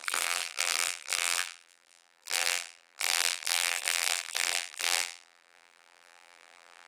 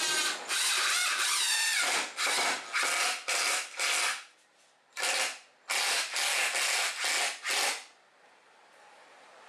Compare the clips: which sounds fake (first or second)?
first